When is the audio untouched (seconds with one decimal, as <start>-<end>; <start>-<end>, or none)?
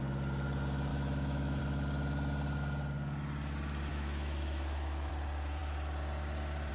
0.0-0.9; 1.6-3.9; 5.1-6.7